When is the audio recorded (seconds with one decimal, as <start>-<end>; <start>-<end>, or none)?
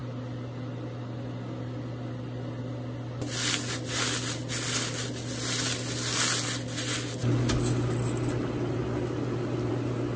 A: 0.0-10.2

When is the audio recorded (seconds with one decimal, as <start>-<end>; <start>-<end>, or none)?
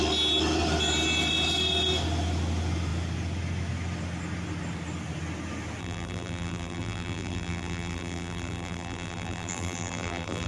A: 0.0-5.8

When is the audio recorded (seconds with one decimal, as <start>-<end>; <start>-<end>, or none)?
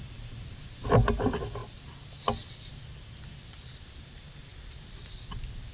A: 0.0-5.7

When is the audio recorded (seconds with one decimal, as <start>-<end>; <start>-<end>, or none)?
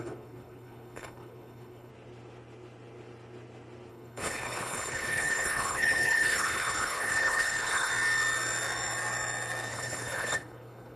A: 1.9-3.9; 7.9-9.7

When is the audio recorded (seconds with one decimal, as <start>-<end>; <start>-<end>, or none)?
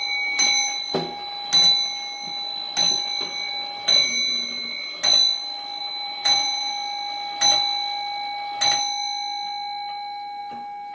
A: 0.0-5.8; 6.7-10.9